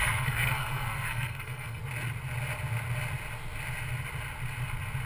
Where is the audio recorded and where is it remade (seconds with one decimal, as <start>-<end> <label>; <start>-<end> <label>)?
0.0-1.8 remade; 1.8-5.1 recorded